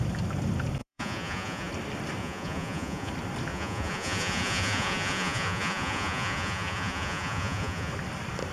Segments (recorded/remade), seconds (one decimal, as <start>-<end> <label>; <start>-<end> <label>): 0.0-0.8 recorded; 0.8-1.7 remade; 1.7-2.2 recorded; 2.2-3.1 remade; 3.1-3.5 recorded; 3.5-7.9 remade; 7.9-8.5 recorded